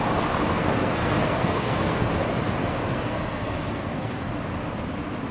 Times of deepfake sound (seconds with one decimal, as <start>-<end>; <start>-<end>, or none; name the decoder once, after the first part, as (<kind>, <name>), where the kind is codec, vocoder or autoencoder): 0.5-2.1 (codec, SNAC); 2.6-4.3